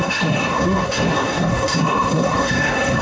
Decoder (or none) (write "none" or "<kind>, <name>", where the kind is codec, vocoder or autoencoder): codec, SNAC